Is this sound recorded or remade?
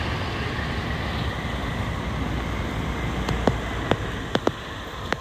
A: recorded